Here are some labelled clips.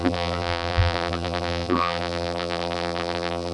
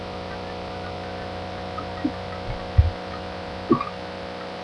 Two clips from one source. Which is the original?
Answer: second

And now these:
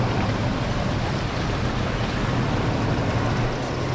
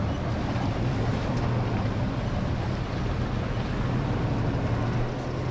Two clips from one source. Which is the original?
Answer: second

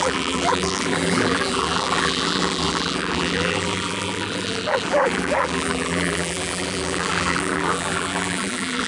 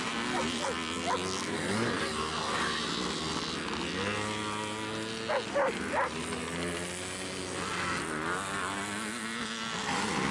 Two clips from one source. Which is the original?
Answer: second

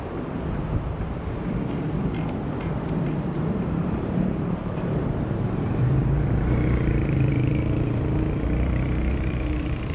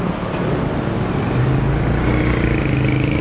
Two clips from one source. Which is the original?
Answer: second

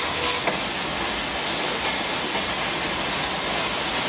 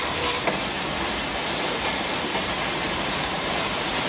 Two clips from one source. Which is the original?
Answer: first